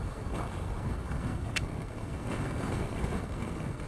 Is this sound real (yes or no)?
no